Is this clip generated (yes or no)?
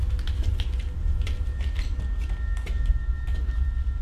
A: no